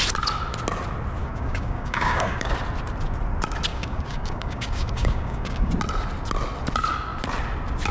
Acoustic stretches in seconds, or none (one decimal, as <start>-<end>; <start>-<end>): 0.0-1.2; 2.5-3.7; 5.7-7.9